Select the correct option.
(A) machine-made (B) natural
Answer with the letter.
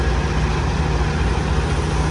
B